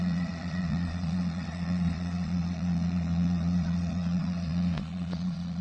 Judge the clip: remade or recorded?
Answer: remade